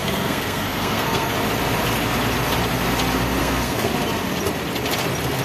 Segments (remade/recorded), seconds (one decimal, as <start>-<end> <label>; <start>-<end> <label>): 0.0-1.3 remade; 1.3-3.4 recorded; 3.4-3.9 remade; 3.9-5.4 recorded